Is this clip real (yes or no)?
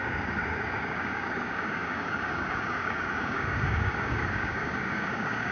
no